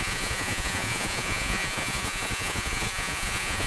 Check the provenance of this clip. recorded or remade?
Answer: remade